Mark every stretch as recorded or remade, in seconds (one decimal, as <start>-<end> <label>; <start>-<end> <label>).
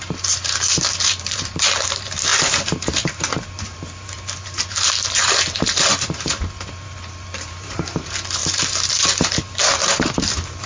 0.0-10.7 remade